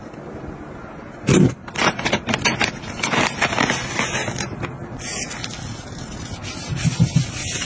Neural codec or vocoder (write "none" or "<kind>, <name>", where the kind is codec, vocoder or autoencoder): none